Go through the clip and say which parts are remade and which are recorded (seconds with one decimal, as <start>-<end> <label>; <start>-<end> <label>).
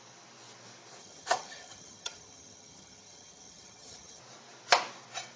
0.0-1.0 recorded; 1.0-4.2 remade; 4.2-5.4 recorded